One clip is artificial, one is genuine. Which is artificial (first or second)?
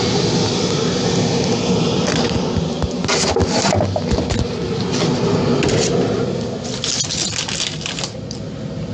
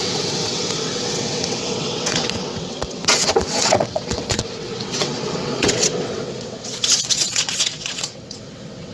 second